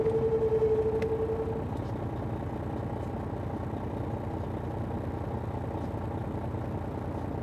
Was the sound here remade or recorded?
recorded